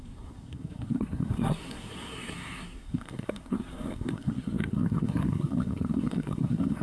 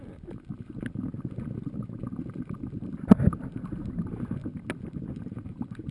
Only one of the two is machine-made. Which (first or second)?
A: first